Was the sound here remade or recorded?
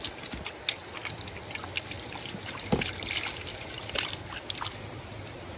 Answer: recorded